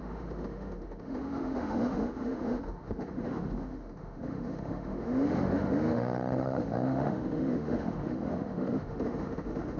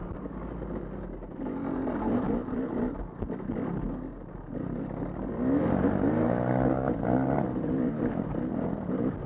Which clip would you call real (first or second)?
second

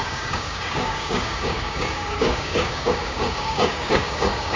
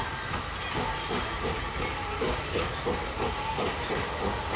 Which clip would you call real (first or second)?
second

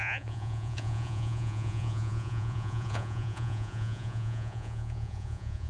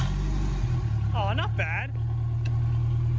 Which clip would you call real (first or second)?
second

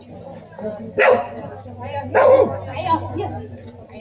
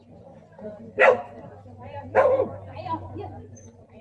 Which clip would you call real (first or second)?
first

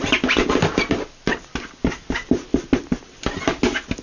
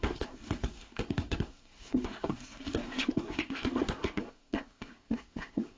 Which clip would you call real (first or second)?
first